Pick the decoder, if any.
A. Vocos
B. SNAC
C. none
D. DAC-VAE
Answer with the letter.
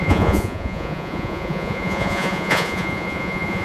A